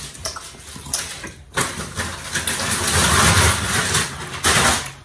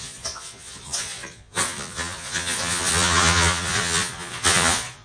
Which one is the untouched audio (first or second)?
first